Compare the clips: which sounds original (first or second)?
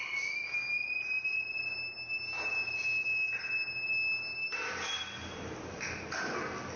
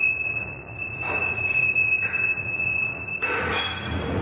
first